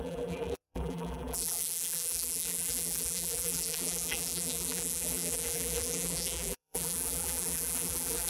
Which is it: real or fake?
fake